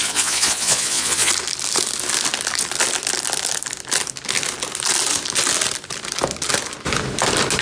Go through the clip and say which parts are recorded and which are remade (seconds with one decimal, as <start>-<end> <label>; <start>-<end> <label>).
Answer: 0.0-1.3 remade; 1.3-7.6 recorded